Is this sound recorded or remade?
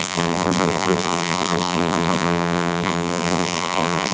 remade